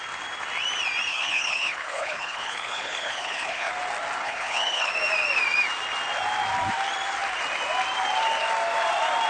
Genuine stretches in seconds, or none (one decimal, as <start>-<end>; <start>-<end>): 0.0-1.1; 3.7-4.2; 4.9-9.3